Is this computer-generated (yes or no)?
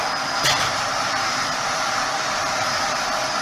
yes